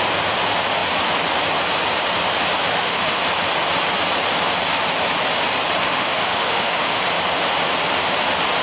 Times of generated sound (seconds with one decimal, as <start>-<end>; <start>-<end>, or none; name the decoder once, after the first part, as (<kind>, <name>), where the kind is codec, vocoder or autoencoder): 2.7-3.2 (autoencoder, DAC-VAE); 5.9-7.0